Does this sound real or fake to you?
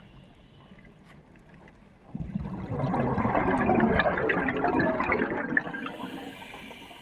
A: real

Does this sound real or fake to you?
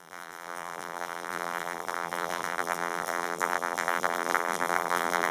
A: fake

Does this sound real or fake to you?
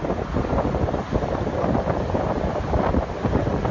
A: real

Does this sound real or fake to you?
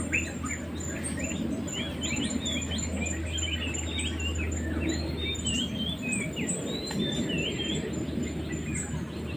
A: real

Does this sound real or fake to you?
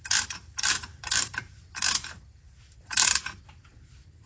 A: fake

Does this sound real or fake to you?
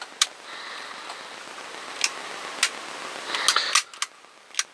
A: real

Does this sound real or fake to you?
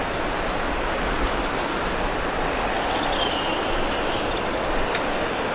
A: real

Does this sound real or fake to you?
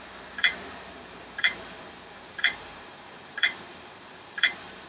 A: fake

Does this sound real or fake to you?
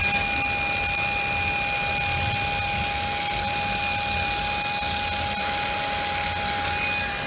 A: real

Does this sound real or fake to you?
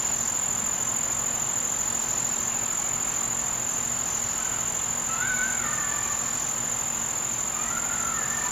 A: real